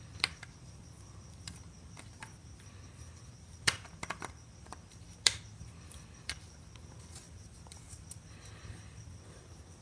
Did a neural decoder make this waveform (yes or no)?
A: yes